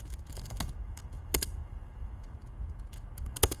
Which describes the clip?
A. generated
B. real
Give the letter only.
A